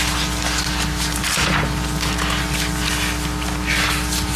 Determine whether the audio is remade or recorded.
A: recorded